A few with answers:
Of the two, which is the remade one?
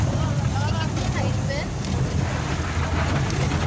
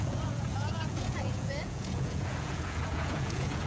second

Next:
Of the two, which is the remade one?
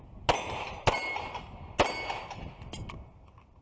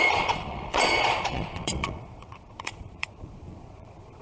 second